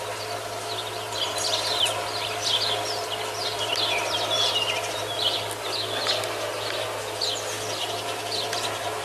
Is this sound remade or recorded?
recorded